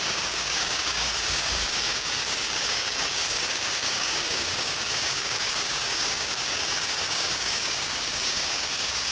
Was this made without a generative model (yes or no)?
no